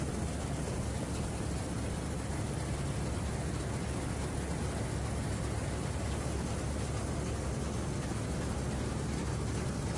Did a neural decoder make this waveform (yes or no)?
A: no